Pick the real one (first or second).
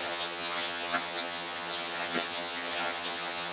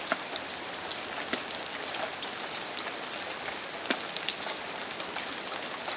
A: second